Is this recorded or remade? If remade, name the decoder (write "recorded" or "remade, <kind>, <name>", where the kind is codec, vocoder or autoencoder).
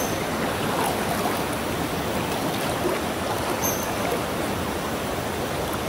recorded